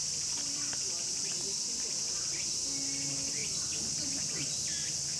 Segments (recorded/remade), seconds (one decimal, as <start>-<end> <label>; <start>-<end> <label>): 0.0-5.2 recorded